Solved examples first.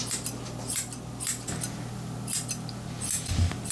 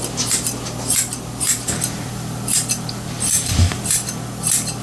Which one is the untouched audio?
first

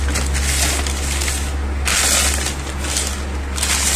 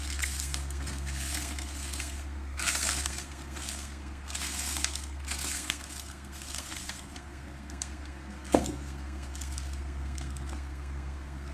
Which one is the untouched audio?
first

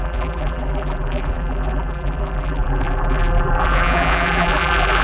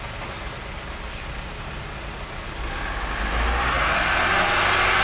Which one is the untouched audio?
second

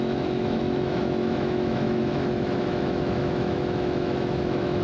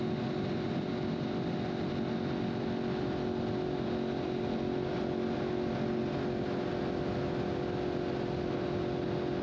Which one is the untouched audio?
second